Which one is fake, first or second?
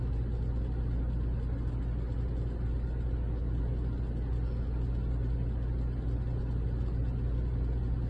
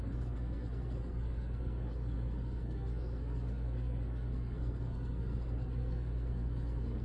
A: second